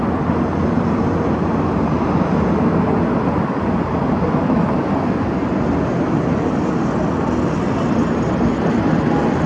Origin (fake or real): real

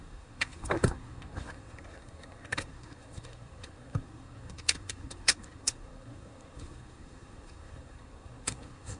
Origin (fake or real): fake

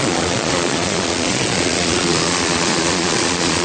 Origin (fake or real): fake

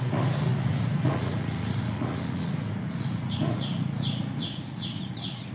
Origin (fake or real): fake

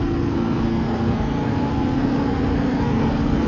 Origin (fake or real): fake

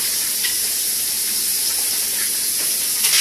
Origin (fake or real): real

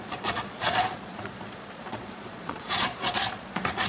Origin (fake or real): fake